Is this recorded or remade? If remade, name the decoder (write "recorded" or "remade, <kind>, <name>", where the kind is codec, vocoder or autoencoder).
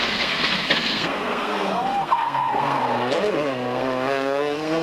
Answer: remade, codec, SNAC